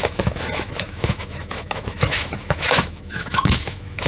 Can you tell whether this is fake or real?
fake